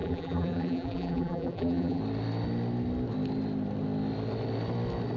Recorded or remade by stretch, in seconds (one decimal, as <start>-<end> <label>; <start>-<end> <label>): 0.0-2.0 remade; 2.0-5.2 recorded